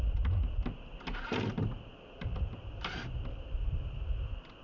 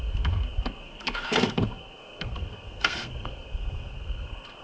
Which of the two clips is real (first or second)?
first